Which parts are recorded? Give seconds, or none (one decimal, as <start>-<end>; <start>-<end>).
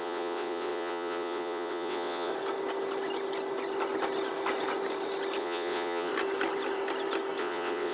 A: 2.3-5.4; 6.1-7.4